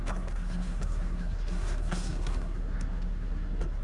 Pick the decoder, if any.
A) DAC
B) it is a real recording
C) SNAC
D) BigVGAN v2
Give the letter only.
C